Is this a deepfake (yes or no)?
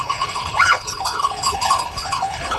yes